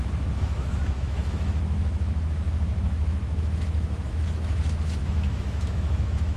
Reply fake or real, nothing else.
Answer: fake